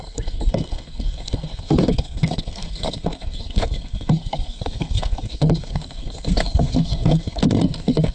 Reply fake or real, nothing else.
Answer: fake